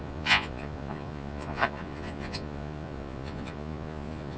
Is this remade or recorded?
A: remade